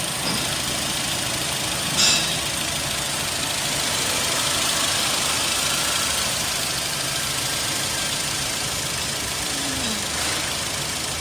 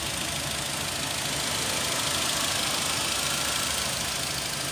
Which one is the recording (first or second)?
second